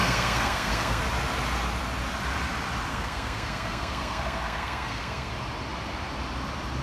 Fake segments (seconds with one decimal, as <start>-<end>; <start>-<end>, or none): 0.0-1.0; 2.9-5.3